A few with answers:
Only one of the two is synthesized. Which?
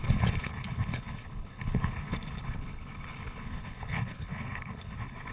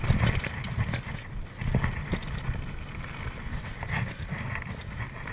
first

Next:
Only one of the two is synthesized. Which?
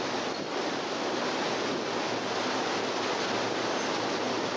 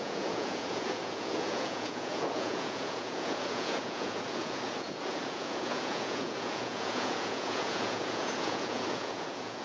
second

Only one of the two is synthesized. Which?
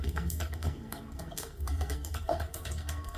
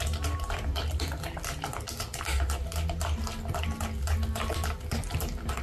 first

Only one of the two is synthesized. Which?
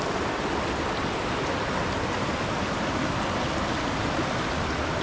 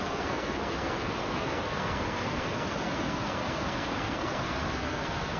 second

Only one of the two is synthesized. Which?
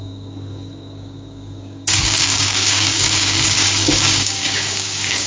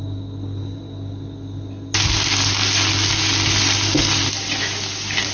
first